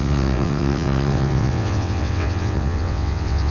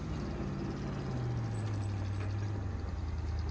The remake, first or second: first